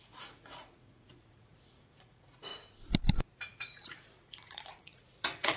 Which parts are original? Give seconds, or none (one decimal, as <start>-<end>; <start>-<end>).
2.5-3.2